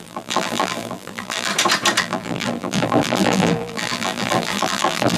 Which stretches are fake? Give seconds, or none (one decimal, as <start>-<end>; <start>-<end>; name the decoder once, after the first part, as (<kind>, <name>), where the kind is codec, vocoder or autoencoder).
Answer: 0.0-1.5 (vocoder, BigVGAN v2); 2.0-5.2